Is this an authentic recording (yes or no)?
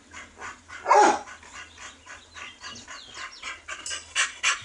yes